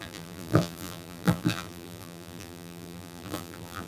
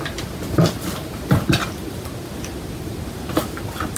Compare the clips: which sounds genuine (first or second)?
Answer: second